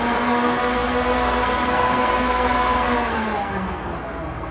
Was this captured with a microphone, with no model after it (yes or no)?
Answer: no